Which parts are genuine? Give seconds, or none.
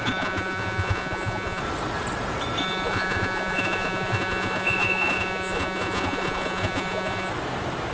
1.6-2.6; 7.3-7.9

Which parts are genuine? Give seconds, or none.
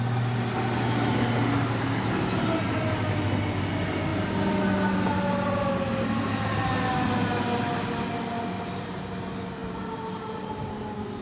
0.0-9.6; 10.7-11.2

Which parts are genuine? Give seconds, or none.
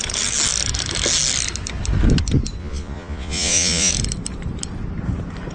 0.0-2.6; 3.9-5.5